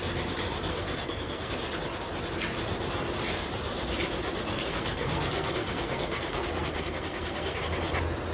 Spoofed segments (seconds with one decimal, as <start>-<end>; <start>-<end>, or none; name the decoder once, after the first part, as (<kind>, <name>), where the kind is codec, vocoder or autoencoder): 0.7-1.5 (codec, SNAC); 4.5-7.6